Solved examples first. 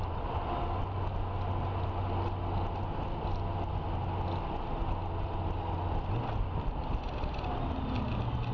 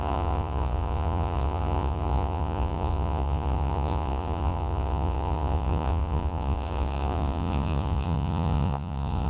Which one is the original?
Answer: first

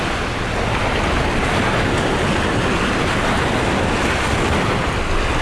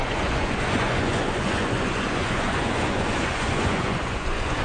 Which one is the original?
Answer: first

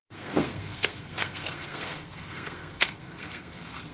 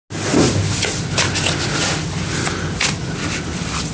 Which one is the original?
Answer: second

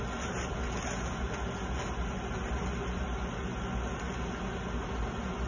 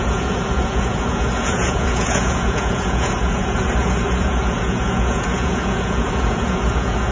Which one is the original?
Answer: first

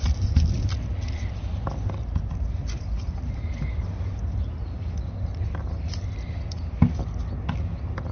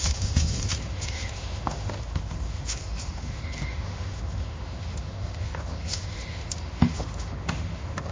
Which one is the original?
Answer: first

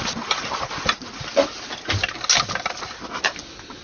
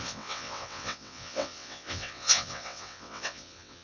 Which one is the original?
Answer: first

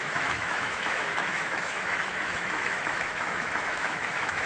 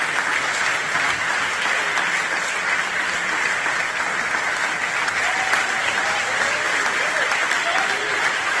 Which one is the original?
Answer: second